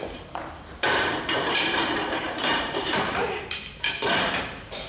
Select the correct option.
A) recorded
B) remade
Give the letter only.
B